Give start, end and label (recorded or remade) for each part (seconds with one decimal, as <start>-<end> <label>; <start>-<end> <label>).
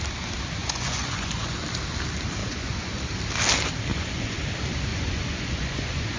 0.0-0.6 recorded; 0.6-1.6 remade; 1.6-2.4 recorded; 2.4-3.0 remade; 3.0-3.9 recorded; 3.9-4.4 remade; 4.4-4.9 recorded; 4.9-6.2 remade